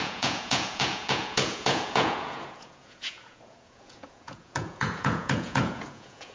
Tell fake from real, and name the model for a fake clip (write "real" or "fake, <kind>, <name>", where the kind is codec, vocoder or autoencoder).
fake, vocoder, Vocos